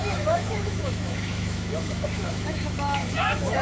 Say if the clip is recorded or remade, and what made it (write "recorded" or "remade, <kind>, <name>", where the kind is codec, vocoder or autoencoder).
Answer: remade, autoencoder, DAC-VAE